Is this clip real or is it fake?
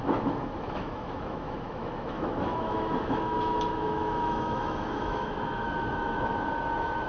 fake